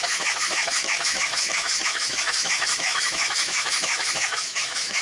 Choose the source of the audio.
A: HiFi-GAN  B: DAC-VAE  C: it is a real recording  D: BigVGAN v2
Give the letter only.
B